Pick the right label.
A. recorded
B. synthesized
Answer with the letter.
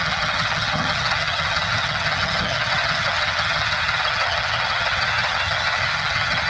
B